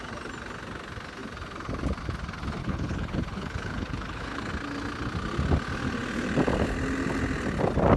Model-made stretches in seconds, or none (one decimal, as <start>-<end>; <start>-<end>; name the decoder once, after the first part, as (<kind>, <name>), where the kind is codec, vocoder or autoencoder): 2.6-4.5 (codec, HILCodec)